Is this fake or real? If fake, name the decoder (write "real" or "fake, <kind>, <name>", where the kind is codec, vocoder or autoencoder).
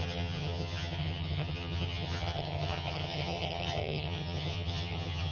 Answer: fake, vocoder, HiFi-GAN